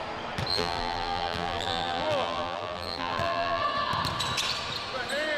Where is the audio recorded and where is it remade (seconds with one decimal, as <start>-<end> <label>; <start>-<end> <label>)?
0.0-0.5 recorded; 0.5-3.6 remade; 3.6-5.4 recorded